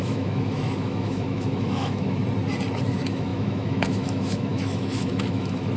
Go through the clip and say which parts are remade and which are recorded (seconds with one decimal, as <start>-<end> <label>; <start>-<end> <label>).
0.0-2.2 remade; 2.2-2.9 recorded; 2.9-5.8 remade